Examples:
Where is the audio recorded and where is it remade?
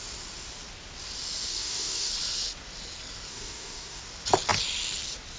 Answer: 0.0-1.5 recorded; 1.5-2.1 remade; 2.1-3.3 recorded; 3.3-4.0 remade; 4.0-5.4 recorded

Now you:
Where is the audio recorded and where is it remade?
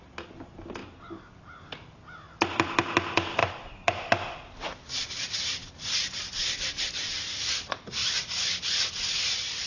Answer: 0.0-9.7 recorded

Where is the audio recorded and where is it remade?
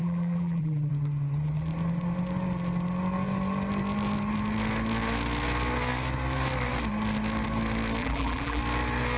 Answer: 0.0-0.9 remade; 0.9-8.0 recorded; 8.0-8.6 remade; 8.6-9.2 recorded